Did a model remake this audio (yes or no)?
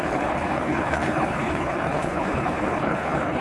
yes